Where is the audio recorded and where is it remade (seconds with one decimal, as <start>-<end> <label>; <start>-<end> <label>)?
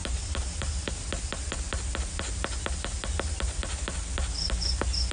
0.0-1.0 remade; 1.0-5.1 recorded